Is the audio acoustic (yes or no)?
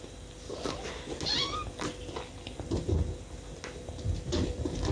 yes